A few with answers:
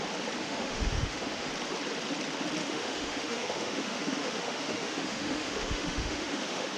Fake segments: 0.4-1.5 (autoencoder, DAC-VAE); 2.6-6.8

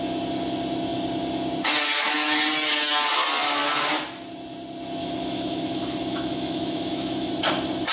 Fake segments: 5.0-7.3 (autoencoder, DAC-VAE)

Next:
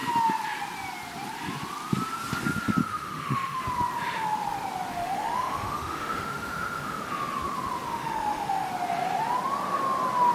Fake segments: 2.8-3.6 (autoencoder, DAC-VAE); 4.9-7.0; 7.9-8.7

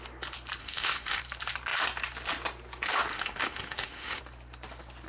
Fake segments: 0.6-1.2 (autoencoder, DAC-VAE); 3.1-4.2

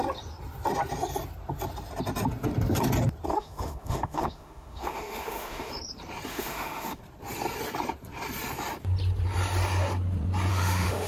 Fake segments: 3.3-5.7 (autoencoder, DAC-VAE); 6.3-7.0; 10.5-11.1

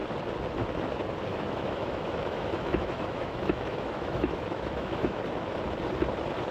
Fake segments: 1.3-5.2 (autoencoder, DAC-VAE)

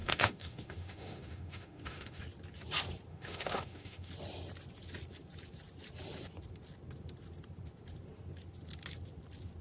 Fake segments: 0.0-2.2 (autoencoder, DAC-VAE); 3.1-4.1

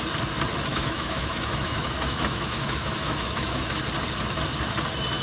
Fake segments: 0.7-3.8 (autoencoder, DAC-VAE)